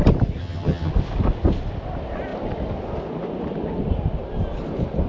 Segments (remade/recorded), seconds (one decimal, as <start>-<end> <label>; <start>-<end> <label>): 0.0-0.4 recorded; 0.4-0.9 remade; 0.9-5.1 recorded